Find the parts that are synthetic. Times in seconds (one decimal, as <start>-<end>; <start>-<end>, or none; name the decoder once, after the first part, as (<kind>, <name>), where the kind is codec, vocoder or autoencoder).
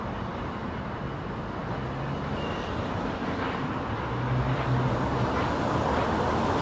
none